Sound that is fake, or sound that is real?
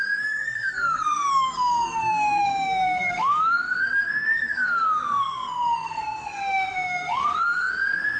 fake